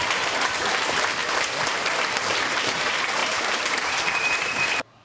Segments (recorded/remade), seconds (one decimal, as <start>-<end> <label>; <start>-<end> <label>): 0.0-5.0 remade